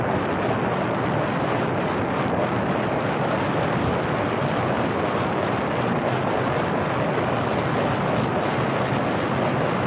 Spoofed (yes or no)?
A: no